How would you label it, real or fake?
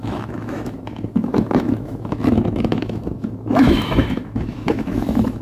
fake